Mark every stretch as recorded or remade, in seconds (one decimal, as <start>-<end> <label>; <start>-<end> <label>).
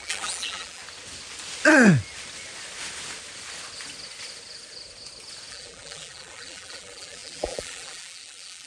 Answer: 0.0-0.8 remade; 0.8-5.5 recorded; 5.5-8.7 remade